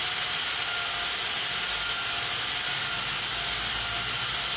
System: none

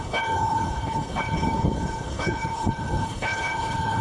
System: codec, HILCodec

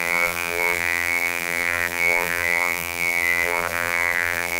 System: vocoder, BigVGAN v2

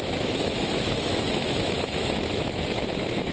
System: autoencoder, DAC-VAE